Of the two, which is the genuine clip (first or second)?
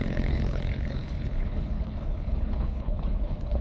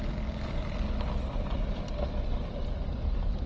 second